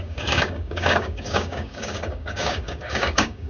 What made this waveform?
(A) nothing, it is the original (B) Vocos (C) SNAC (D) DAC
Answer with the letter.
D